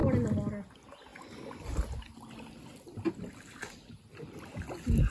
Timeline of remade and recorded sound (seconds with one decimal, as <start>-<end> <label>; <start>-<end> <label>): 0.0-5.1 recorded